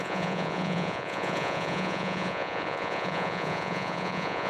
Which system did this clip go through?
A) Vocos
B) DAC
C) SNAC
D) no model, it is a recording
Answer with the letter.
A